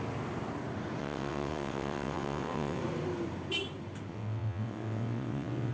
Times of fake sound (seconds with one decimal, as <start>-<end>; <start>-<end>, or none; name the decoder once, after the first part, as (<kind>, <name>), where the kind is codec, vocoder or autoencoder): 1.0-2.8 (vocoder, WaveNeXt); 4.1-5.7